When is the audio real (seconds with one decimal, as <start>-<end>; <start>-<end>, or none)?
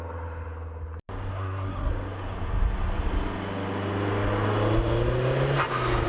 0.0-1.3; 1.9-6.1